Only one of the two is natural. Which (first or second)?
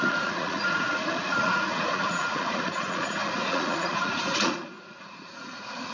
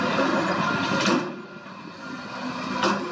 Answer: second